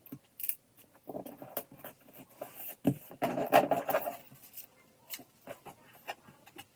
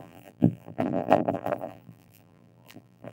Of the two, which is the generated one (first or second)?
second